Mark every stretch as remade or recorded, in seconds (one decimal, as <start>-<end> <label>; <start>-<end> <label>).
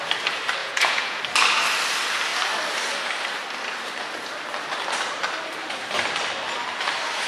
0.0-0.6 recorded; 0.6-1.2 remade; 1.2-7.3 recorded